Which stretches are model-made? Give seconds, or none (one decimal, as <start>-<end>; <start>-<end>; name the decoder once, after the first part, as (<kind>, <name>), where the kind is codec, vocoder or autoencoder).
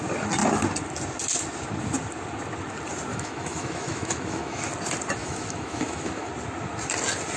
3.1-4.6 (autoencoder, DAC-VAE); 5.2-6.3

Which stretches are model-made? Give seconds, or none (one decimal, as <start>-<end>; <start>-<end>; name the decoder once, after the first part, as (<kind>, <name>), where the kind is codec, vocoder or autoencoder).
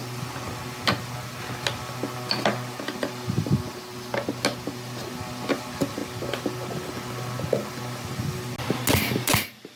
none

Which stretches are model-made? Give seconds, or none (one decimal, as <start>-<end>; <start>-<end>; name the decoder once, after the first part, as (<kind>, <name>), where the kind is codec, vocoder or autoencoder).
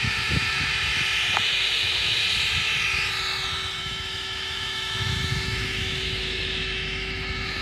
0.0-0.7 (autoencoder, DAC-VAE); 1.4-2.2; 3.8-7.6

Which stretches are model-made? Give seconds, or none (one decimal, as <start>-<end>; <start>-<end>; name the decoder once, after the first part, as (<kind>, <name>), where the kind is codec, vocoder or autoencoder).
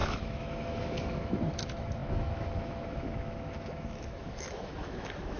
0.0-5.4 (autoencoder, DAC-VAE)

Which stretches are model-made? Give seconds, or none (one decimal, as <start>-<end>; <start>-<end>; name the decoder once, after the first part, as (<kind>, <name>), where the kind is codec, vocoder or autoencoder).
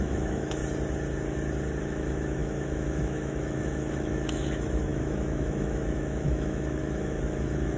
0.0-0.6 (autoencoder, DAC-VAE); 1.8-7.8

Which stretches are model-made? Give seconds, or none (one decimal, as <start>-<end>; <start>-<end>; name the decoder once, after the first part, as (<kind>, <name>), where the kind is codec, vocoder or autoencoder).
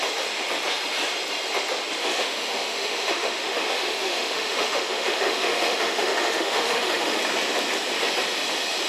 2.0-7.2 (autoencoder, DAC-VAE)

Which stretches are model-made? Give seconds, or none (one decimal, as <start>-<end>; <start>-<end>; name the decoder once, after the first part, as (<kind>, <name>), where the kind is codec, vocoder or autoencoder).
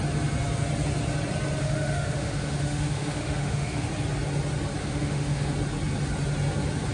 1.6-3.9 (autoencoder, DAC-VAE); 4.8-5.5